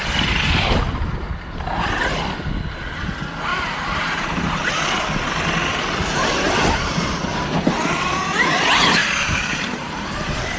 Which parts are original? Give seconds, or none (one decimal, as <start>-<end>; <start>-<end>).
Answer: 0.0-3.5; 4.9-9.0